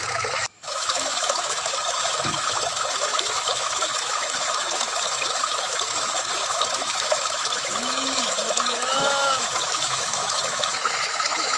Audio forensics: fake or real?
fake